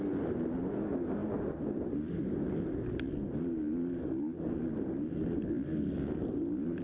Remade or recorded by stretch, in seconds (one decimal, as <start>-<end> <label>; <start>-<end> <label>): 0.0-6.8 recorded